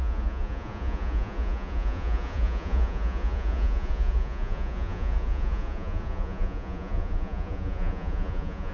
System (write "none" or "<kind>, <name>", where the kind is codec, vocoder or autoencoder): vocoder, Vocos